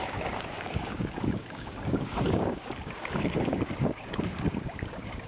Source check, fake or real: fake